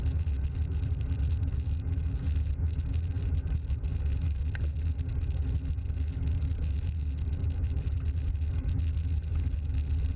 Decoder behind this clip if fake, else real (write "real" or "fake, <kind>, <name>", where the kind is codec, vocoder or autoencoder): real